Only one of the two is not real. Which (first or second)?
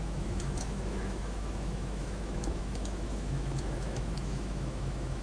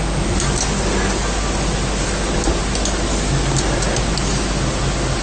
first